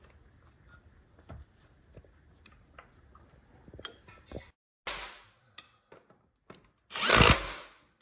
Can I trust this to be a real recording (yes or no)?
yes